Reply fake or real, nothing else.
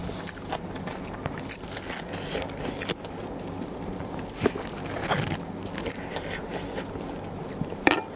real